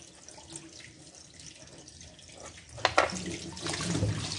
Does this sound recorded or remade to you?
recorded